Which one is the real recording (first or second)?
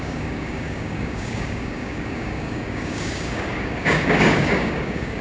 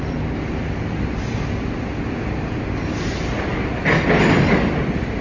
second